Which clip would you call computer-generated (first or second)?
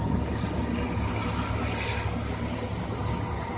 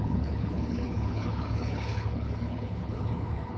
second